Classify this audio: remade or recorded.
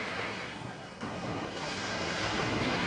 remade